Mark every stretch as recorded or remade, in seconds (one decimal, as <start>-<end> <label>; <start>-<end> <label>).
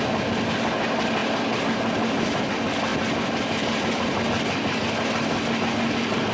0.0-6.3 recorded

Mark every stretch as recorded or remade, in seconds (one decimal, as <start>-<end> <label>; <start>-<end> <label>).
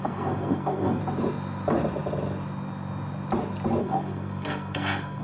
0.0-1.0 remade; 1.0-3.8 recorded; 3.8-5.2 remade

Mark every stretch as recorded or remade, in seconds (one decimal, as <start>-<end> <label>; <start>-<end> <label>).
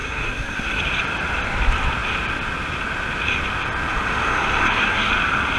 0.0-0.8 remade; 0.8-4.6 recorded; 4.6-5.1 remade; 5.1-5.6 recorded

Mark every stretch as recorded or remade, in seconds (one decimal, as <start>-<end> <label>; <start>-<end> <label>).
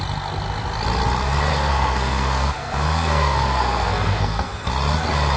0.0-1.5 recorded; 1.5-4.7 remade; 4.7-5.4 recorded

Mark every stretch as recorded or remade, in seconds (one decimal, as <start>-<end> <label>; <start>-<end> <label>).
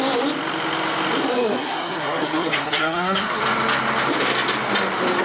0.0-1.3 recorded; 1.3-3.4 remade; 3.4-5.2 recorded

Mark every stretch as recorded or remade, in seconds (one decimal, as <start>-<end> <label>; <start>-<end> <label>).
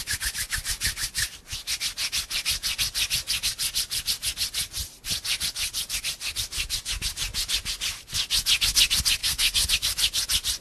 0.0-9.2 recorded; 9.2-9.7 remade; 9.7-10.6 recorded